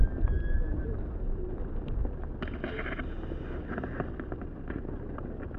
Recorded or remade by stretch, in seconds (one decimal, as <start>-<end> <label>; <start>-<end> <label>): 0.0-5.6 recorded